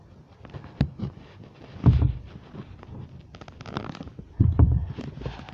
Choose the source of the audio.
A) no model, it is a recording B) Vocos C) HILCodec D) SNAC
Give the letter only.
A